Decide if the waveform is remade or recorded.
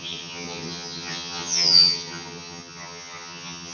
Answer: remade